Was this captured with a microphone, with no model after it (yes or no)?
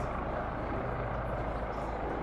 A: yes